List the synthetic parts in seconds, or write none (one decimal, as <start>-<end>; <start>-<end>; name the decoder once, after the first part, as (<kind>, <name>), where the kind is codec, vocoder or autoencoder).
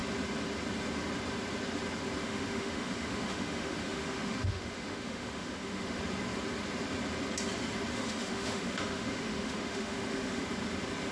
2.2-6.0 (autoencoder, DAC-VAE); 7.9-10.4